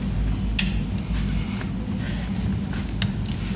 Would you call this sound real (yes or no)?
yes